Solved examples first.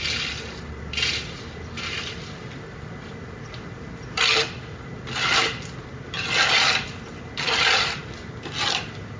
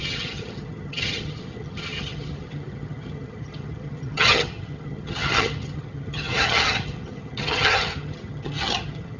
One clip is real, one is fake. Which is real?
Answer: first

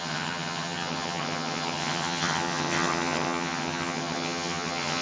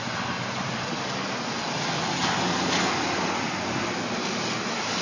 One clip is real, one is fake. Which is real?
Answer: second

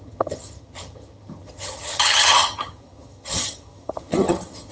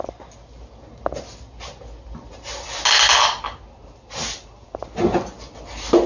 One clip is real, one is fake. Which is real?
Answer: second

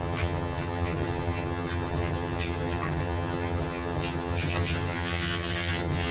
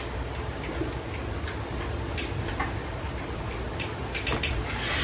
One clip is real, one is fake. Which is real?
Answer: second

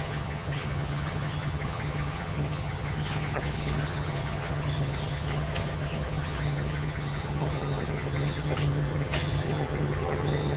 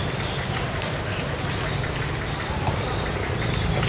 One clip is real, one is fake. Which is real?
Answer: second